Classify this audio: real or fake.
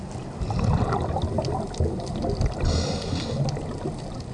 real